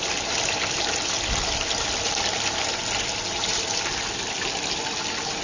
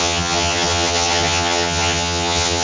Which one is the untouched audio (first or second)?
first